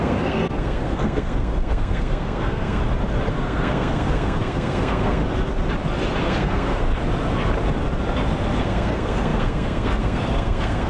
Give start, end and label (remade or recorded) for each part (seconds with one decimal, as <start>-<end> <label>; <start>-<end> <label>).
0.0-2.8 remade; 2.8-3.3 recorded; 3.3-5.2 remade; 5.2-6.2 recorded; 6.2-6.9 remade; 6.9-8.6 recorded; 8.6-10.9 remade